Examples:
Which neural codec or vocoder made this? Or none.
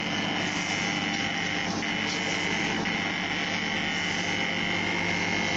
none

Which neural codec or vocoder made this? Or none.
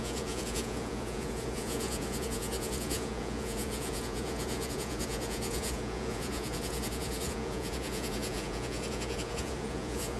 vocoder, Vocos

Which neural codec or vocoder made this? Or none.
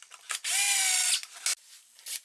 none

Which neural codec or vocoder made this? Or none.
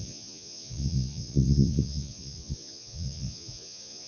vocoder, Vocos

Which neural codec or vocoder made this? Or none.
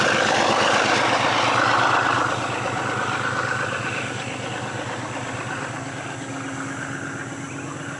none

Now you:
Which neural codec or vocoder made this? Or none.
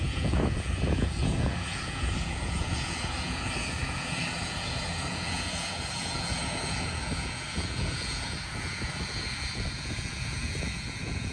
vocoder, Vocos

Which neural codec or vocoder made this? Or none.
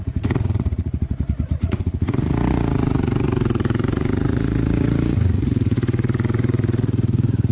vocoder, Vocos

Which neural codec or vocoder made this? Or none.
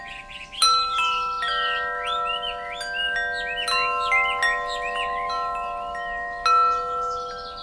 none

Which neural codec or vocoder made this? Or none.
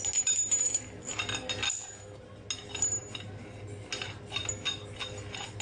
none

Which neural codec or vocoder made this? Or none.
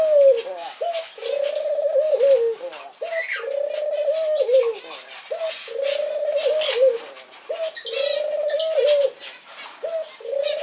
none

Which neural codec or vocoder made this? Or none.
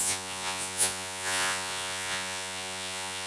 vocoder, Vocos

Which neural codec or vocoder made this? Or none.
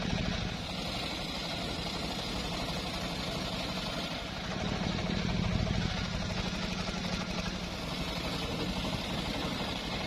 none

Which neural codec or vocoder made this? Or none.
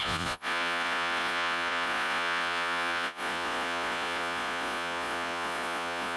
vocoder, Vocos